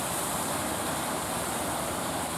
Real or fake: fake